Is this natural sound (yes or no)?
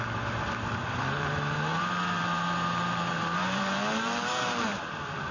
no